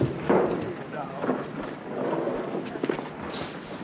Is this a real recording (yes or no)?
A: yes